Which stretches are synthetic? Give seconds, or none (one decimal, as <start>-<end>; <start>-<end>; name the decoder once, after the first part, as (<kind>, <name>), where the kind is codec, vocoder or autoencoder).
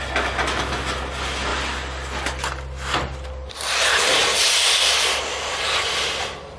none